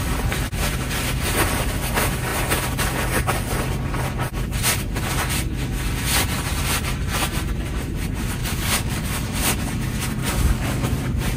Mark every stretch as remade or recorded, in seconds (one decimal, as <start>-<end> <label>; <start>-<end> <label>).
0.0-8.4 recorded; 8.4-9.1 remade; 9.1-10.2 recorded; 10.2-10.9 remade; 10.9-11.4 recorded